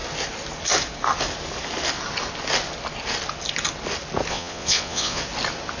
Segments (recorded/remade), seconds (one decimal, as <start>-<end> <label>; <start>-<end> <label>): 0.0-4.3 recorded; 4.3-5.2 remade; 5.2-5.8 recorded